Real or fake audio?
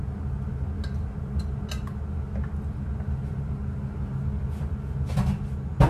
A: real